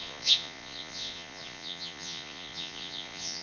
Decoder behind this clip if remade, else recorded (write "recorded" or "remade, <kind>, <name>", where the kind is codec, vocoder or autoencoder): remade, vocoder, Vocos